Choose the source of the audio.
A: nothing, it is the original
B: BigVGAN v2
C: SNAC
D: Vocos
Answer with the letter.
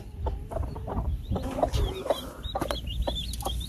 A